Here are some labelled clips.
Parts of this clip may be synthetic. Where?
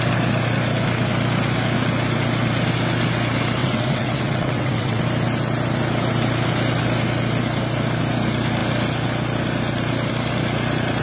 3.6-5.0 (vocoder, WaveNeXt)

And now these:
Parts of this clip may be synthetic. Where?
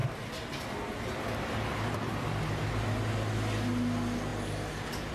none